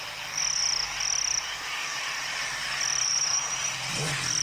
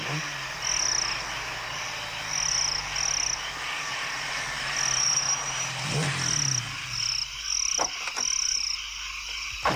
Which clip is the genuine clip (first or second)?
second